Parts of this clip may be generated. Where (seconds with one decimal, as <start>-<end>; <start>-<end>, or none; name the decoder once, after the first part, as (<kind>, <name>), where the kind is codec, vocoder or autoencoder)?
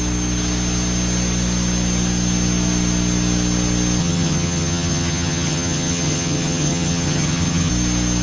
4.0-7.7 (vocoder, HiFi-GAN)